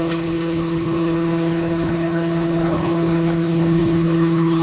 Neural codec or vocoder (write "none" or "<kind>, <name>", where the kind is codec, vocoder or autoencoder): codec, HILCodec